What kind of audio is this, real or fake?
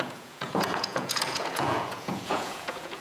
fake